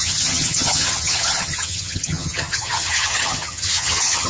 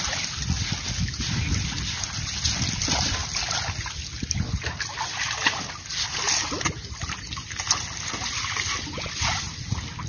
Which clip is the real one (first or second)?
second